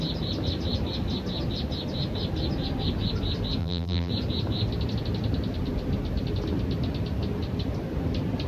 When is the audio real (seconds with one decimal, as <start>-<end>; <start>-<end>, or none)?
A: 0.0-3.6; 4.1-8.5